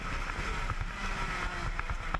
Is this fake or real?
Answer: real